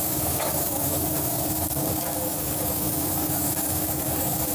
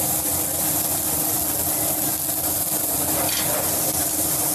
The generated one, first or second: first